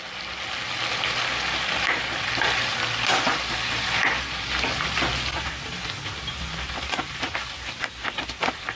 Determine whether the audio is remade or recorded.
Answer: recorded